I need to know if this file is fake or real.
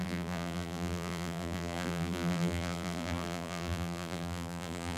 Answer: fake